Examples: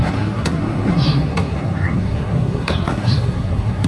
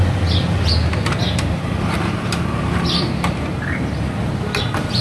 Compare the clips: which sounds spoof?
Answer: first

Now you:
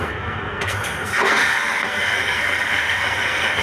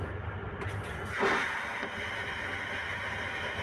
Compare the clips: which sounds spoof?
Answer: first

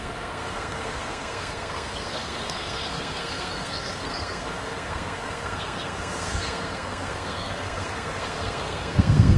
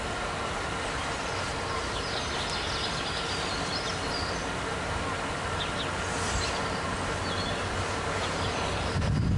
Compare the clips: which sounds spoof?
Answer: first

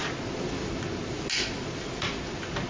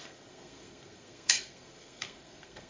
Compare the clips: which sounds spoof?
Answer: second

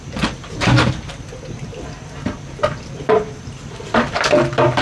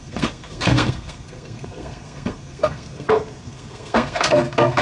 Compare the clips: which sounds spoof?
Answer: second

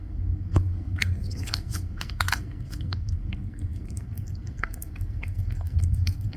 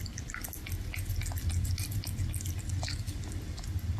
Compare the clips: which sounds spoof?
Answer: first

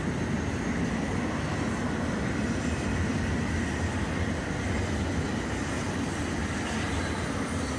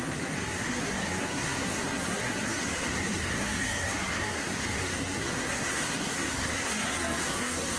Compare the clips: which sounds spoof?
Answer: second